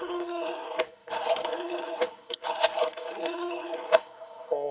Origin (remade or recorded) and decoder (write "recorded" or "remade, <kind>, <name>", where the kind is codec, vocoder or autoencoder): remade, codec, SNAC